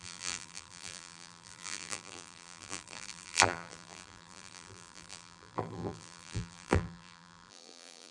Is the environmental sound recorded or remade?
remade